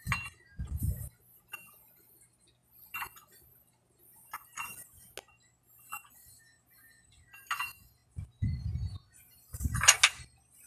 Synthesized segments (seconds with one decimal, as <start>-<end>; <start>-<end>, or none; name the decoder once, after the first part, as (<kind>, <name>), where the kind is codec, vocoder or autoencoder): none